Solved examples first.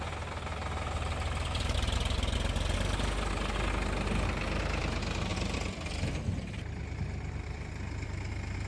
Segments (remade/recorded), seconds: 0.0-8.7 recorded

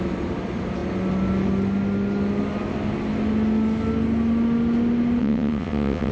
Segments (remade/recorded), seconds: 0.0-5.2 recorded; 5.2-6.1 remade

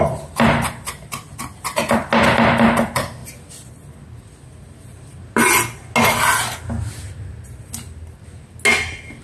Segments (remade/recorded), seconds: 0.0-9.2 recorded

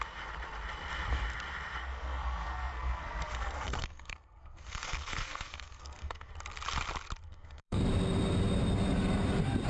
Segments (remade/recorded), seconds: 0.0-1.8 recorded; 1.8-6.3 remade; 6.3-7.3 recorded; 7.3-7.8 remade; 7.8-9.7 recorded

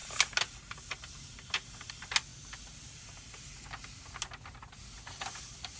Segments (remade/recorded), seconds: 0.0-5.8 recorded

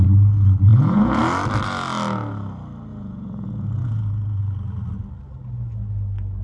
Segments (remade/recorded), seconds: 0.0-0.7 recorded; 0.7-1.2 remade; 1.2-2.9 recorded; 2.9-4.4 remade; 4.4-6.4 recorded